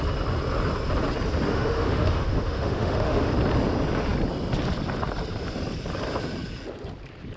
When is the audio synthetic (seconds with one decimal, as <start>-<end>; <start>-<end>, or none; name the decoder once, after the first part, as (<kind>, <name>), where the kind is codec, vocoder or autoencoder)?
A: 1.5-3.3 (autoencoder, DAC-VAE)